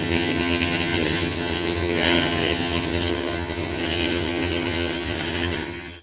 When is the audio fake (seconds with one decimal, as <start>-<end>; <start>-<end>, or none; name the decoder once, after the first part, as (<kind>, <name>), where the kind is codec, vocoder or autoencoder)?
0.0-6.0 (vocoder, HiFi-GAN)